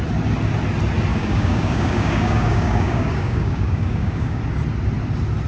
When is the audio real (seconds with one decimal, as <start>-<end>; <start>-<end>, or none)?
0.0-1.1; 4.4-5.5